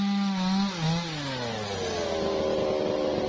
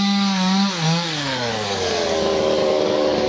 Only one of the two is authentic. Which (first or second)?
first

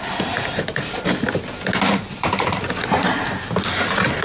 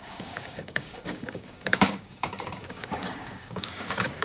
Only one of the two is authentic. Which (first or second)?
first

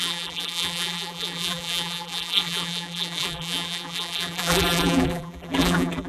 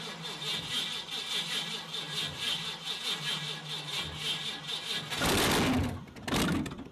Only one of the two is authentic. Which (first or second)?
second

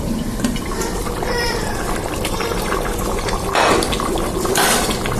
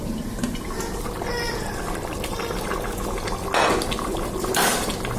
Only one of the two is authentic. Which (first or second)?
second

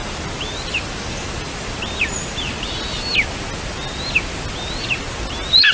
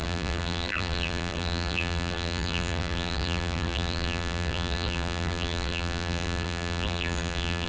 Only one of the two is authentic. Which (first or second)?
first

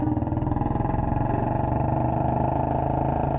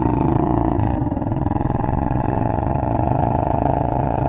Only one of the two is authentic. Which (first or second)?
first